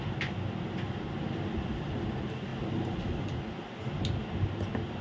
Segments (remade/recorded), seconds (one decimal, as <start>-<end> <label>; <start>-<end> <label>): 0.0-5.0 recorded